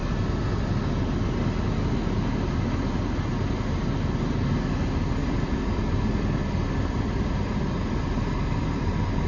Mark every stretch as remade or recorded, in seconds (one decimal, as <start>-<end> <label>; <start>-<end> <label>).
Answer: 0.0-5.2 recorded; 5.2-9.3 remade